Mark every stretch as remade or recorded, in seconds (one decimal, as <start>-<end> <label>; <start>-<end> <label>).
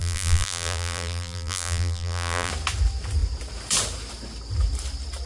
0.0-2.5 remade; 2.5-5.3 recorded